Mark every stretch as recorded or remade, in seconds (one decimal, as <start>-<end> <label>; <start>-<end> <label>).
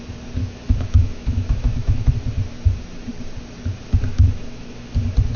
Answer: 0.0-0.4 recorded; 0.4-2.1 remade; 2.1-4.1 recorded; 4.1-4.8 remade; 4.8-5.4 recorded